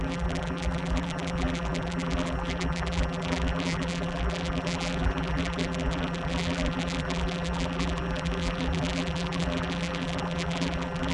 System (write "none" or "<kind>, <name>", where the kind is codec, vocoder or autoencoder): vocoder, BigVGAN v2